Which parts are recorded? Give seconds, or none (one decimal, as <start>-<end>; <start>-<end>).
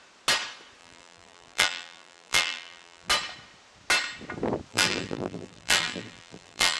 0.0-0.8; 3.1-4.7